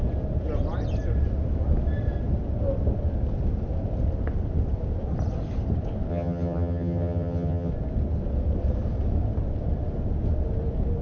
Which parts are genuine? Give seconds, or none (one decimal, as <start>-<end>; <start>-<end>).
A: 0.0-6.1; 7.7-11.0

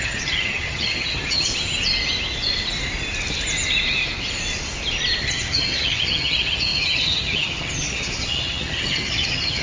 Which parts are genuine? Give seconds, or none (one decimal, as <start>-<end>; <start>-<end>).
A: 1.5-5.2